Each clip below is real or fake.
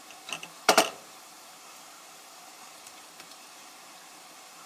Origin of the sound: fake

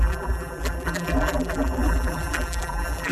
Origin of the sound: fake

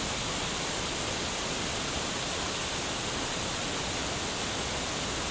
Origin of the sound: real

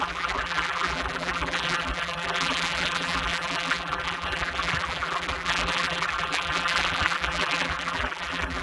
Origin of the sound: fake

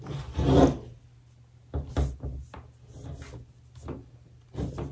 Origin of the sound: real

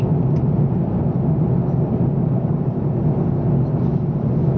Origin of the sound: real